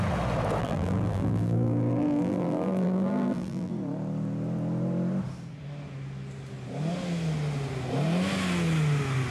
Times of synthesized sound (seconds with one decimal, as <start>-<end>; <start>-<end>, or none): 0.6-3.7